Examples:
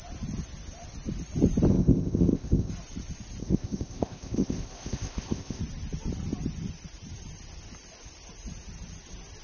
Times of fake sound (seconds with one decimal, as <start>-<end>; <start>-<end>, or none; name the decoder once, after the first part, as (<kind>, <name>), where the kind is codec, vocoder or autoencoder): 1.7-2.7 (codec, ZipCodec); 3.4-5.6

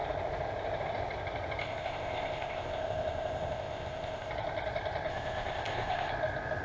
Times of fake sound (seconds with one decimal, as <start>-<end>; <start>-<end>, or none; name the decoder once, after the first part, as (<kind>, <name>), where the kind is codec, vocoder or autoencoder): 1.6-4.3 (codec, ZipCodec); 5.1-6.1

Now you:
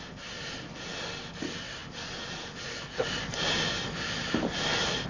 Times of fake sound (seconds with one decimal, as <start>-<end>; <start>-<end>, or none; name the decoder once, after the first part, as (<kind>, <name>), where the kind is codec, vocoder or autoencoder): none

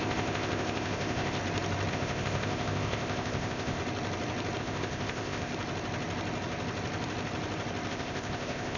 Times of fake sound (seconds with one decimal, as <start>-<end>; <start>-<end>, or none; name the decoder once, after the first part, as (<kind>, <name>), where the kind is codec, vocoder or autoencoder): 0.0-1.4 (codec, ZipCodec); 1.9-3.8; 4.6-5.5; 7.9-8.8

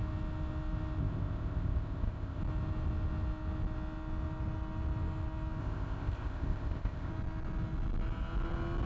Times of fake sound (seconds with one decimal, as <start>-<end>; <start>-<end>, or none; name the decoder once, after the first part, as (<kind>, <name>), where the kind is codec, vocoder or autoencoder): 1.0-2.4 (codec, ZipCodec); 5.6-7.1

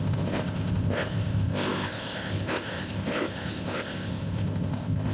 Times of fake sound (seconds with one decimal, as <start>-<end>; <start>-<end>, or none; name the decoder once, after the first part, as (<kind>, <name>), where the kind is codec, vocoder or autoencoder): 0.0-5.1 (codec, ZipCodec)

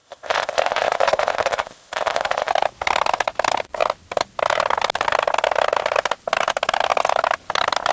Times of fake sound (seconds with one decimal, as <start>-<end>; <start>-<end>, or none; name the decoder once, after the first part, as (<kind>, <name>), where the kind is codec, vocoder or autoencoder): 0.0-2.5 (codec, ZipCodec)